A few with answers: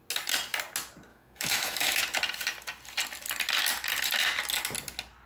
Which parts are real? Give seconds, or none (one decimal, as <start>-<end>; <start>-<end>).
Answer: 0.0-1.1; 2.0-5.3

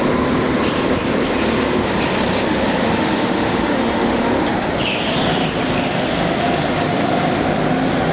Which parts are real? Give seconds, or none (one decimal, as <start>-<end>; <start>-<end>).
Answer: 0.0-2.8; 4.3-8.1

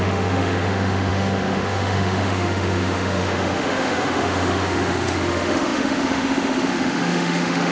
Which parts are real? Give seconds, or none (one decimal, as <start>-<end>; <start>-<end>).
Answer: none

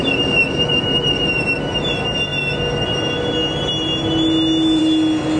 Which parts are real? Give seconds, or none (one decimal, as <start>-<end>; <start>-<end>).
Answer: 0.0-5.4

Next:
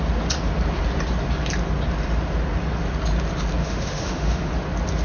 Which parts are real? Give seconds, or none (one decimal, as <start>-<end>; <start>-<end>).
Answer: 0.0-3.6; 4.5-5.0

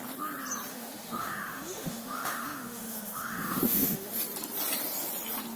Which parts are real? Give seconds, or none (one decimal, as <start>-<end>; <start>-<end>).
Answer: 0.0-0.7; 4.1-5.6